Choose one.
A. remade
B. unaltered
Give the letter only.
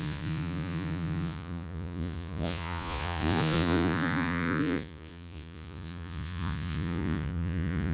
A